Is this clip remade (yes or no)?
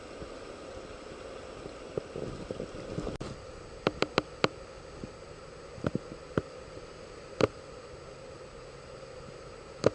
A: no